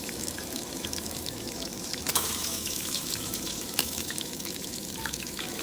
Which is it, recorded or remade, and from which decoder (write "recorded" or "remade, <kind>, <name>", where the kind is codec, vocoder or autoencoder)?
remade, autoencoder, DAC-VAE